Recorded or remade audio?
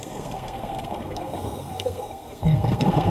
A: remade